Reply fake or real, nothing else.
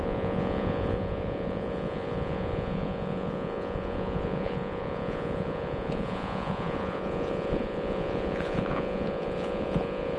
fake